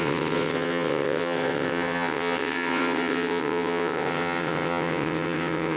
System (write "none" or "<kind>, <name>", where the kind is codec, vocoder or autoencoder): vocoder, WaveNeXt